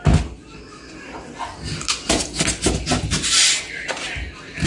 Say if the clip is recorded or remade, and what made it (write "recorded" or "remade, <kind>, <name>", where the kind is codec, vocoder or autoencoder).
recorded